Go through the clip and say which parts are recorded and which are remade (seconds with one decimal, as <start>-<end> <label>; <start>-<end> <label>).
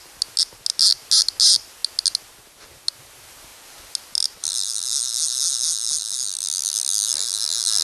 0.0-7.8 recorded